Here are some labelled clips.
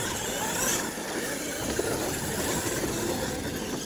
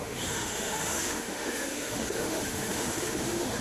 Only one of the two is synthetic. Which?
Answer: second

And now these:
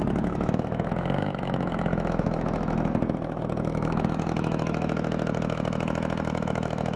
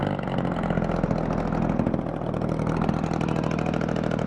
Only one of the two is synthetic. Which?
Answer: first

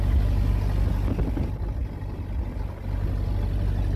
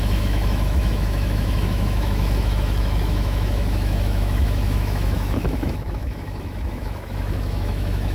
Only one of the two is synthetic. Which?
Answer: second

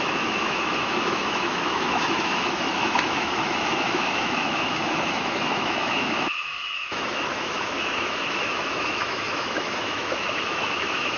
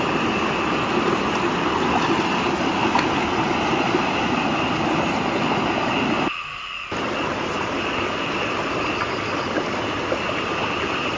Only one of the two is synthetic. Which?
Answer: first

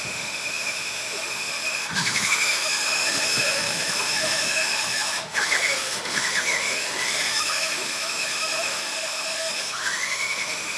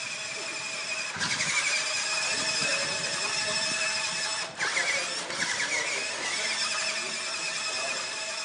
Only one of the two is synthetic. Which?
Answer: first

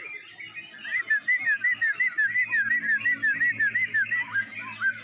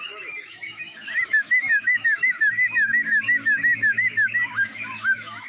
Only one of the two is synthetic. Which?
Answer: second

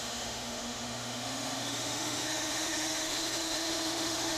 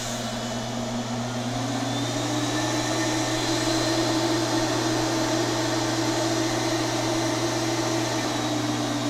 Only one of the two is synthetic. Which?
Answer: first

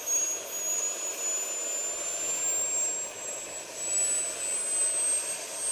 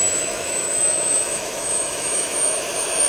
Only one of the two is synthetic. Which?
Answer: second